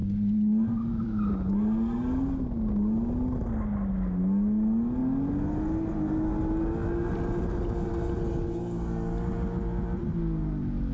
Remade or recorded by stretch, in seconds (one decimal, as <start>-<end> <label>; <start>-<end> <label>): 0.0-1.3 remade; 1.3-10.9 recorded